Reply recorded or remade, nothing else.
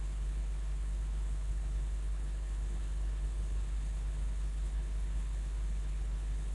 remade